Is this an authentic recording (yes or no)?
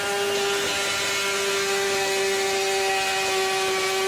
yes